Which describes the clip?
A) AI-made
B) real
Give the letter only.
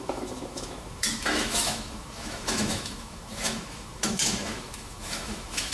A